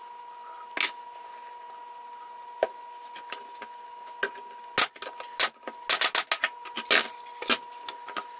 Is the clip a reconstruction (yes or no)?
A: no